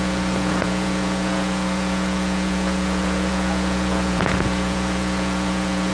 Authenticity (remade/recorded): remade